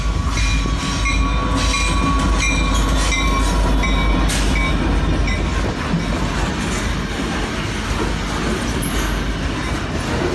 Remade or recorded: recorded